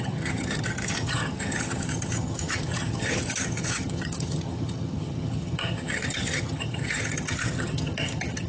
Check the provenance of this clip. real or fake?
fake